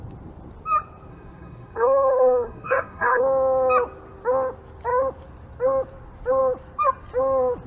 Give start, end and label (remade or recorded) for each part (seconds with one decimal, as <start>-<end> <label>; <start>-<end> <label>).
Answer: 0.0-1.1 recorded; 1.1-3.2 remade; 3.2-7.7 recorded